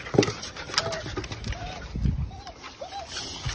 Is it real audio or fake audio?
real